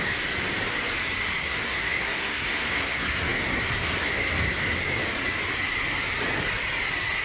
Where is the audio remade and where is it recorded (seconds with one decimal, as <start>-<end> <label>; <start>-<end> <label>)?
0.0-1.4 recorded; 1.4-4.8 remade; 4.8-7.2 recorded